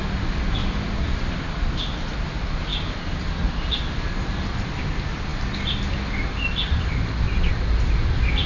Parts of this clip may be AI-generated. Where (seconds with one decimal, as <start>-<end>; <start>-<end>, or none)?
0.6-1.3